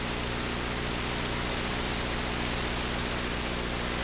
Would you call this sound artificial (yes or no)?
no